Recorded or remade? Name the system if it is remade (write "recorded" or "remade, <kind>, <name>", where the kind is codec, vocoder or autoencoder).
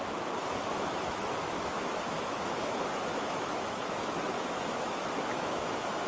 remade, autoencoder, DAC-VAE